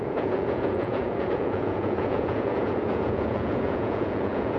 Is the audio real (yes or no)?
no